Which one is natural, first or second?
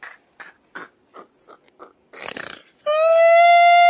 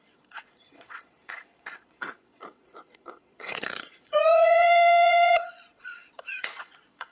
first